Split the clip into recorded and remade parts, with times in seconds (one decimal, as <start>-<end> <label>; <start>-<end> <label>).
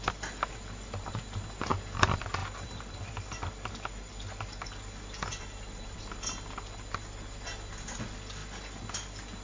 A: 0.0-2.4 recorded; 2.4-3.7 remade; 3.7-5.3 recorded; 5.3-6.0 remade; 6.0-9.4 recorded